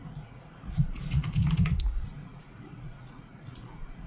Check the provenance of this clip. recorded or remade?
remade